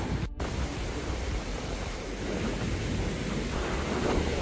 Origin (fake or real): fake